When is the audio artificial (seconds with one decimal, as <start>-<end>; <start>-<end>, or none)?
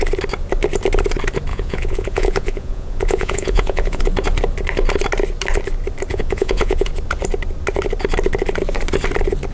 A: 1.5-4.0; 6.1-6.9